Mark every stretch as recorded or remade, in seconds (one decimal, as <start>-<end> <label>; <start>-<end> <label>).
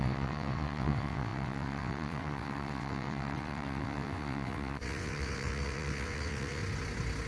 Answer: 0.0-6.6 remade; 6.6-7.3 recorded